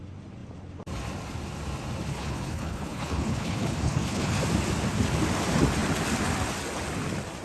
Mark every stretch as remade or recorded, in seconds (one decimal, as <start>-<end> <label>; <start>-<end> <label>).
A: 0.0-2.1 recorded; 2.1-4.4 remade; 4.4-7.4 recorded